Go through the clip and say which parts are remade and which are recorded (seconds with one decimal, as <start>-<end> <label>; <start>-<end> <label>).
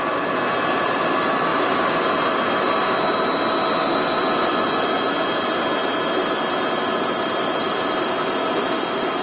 0.0-6.2 recorded; 6.2-8.2 remade; 8.2-9.2 recorded